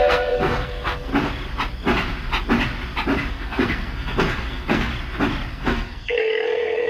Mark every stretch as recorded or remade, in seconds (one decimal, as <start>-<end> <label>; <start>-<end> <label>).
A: 0.0-1.1 remade; 1.1-3.3 recorded; 3.3-4.9 remade; 4.9-5.5 recorded; 5.5-6.9 remade